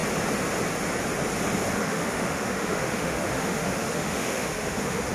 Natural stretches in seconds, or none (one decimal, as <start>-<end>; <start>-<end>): 0.0-1.8